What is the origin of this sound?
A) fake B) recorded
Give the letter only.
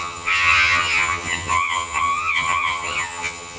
A